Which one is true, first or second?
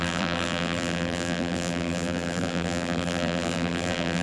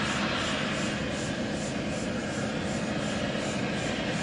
second